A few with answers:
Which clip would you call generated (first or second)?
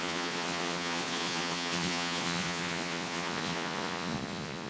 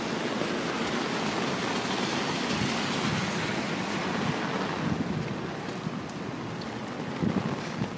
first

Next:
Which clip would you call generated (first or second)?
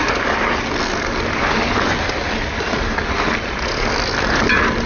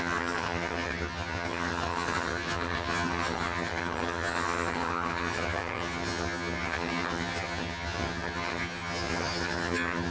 second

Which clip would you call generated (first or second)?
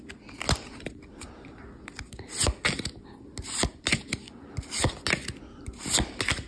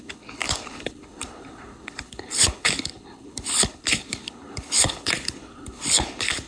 second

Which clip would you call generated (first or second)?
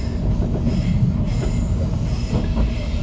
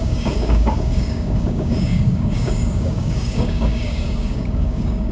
second